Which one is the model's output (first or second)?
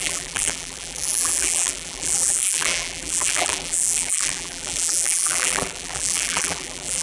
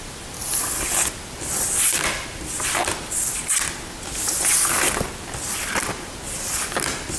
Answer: first